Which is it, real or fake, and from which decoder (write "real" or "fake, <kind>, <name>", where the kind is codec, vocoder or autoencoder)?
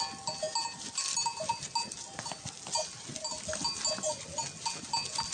real